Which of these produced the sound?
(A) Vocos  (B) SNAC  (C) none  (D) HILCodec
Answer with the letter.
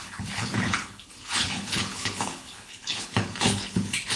D